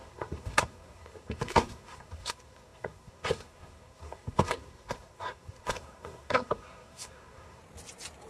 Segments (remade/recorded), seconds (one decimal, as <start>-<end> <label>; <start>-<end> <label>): 0.0-7.6 remade; 7.6-8.3 recorded